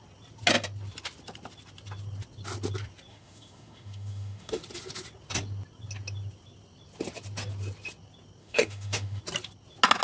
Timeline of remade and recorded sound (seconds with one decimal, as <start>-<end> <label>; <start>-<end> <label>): 0.0-3.1 recorded; 3.1-4.6 remade; 4.6-8.4 recorded; 8.4-9.2 remade; 9.2-10.0 recorded